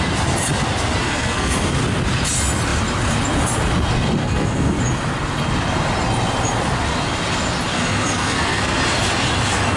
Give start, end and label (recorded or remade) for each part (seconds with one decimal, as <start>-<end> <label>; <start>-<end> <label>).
0.0-1.0 recorded; 1.0-1.8 remade; 1.8-4.2 recorded; 4.2-4.8 remade; 4.8-7.7 recorded; 7.7-8.8 remade; 8.8-9.8 recorded